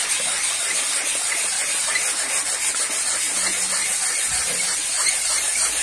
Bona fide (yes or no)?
yes